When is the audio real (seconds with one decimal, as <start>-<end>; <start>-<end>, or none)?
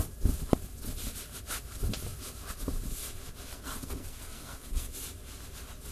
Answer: 0.0-3.5; 4.9-5.9